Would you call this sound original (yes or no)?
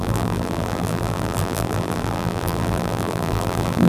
no